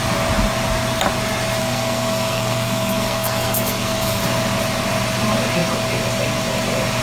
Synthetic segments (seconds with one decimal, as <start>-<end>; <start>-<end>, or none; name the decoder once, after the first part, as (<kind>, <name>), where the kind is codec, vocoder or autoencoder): 1.6-4.2 (codec, SNAC)